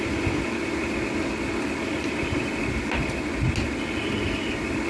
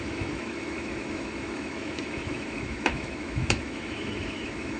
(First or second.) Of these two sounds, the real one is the first